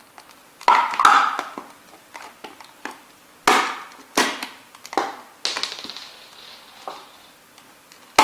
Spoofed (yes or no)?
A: no